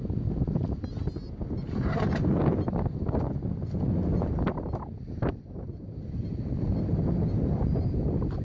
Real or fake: real